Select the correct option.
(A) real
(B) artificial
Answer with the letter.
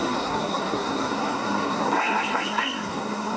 B